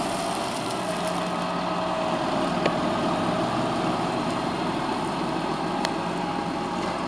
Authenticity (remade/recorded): recorded